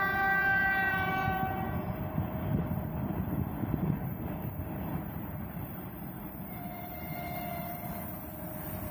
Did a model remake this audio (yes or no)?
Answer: yes